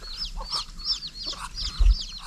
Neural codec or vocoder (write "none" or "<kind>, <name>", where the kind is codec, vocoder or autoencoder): none